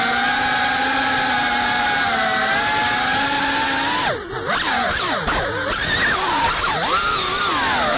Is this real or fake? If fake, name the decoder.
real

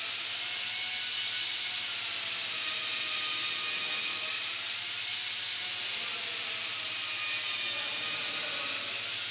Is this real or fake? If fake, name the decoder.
real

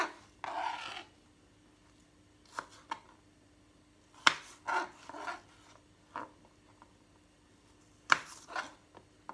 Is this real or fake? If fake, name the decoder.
real